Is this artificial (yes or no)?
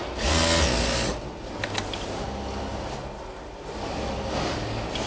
no